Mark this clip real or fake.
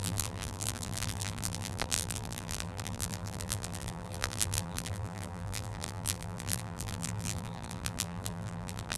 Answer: fake